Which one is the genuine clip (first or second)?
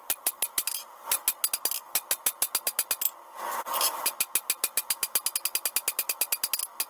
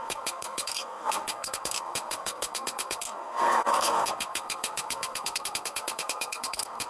first